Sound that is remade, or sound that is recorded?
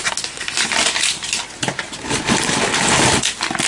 recorded